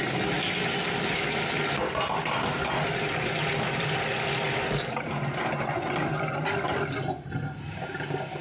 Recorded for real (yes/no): yes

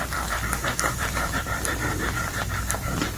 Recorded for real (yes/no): no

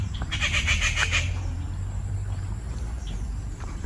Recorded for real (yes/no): no